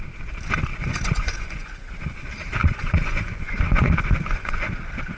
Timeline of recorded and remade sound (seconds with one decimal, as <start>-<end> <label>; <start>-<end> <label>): 0.0-0.7 recorded; 0.7-1.9 remade; 1.9-2.6 recorded; 2.6-4.7 remade; 4.7-5.2 recorded